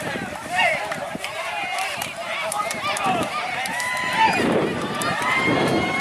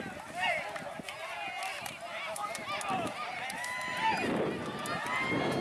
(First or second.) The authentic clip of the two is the second